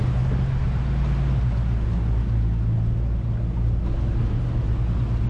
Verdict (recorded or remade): recorded